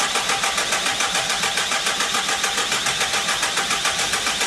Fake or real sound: real